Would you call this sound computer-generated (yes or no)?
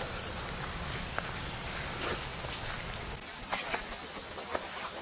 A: no